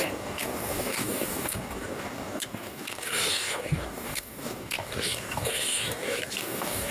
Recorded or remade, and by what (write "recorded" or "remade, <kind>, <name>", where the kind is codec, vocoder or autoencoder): remade, codec, DAC